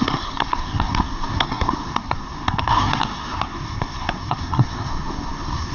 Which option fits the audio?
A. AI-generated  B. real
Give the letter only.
A